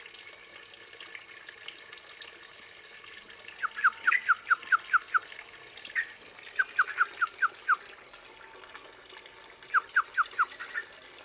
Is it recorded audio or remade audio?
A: recorded